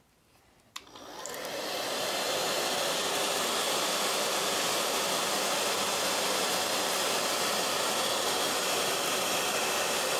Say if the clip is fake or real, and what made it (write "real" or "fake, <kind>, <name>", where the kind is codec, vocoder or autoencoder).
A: fake, vocoder, BigVGAN v2